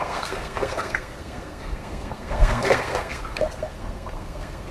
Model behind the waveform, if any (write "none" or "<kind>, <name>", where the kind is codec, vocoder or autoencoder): codec, SNAC